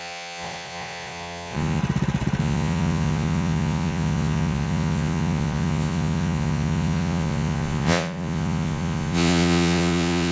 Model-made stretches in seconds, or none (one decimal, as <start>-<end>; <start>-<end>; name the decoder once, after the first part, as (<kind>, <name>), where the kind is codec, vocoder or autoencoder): 0.0-1.8 (vocoder, Vocos); 2.4-10.3